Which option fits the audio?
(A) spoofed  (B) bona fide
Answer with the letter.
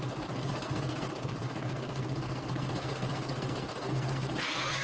A